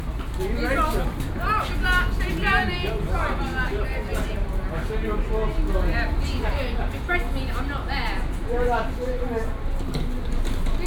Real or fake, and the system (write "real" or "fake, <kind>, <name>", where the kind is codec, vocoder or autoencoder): real